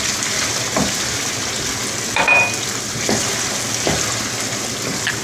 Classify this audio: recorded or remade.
recorded